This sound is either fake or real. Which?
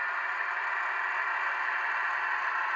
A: real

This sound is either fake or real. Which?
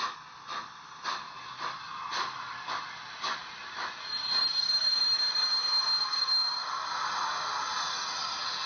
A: real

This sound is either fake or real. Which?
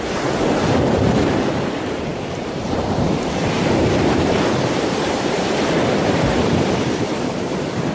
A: fake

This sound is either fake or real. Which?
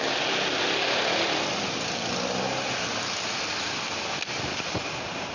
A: real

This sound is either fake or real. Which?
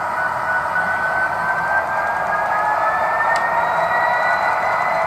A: real